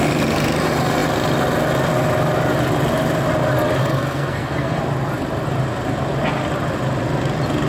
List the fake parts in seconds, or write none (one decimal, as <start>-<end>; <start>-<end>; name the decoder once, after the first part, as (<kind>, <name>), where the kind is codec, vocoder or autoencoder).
3.8-4.8 (codec, SNAC)